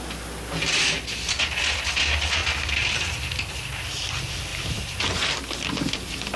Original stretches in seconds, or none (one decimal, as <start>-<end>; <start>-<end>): 0.0-4.5; 5.4-6.4